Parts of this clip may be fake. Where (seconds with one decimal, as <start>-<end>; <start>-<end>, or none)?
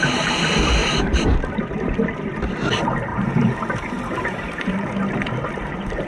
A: 0.8-1.8; 3.1-6.1